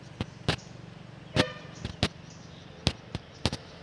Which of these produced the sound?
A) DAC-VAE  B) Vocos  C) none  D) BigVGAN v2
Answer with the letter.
C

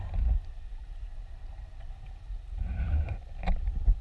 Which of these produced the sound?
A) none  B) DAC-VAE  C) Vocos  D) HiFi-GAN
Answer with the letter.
A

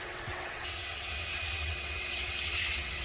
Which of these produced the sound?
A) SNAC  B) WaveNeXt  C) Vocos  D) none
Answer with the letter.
B